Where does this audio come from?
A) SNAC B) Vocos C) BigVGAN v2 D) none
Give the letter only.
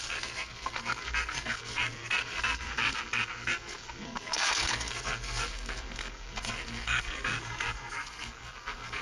A